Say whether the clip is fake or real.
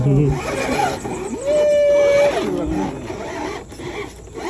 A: real